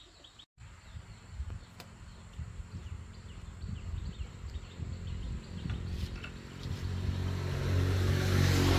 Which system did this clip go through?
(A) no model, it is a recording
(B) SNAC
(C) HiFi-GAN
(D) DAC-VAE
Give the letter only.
A